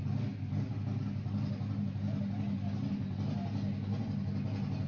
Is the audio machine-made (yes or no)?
no